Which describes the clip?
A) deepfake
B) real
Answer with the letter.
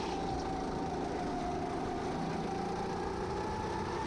B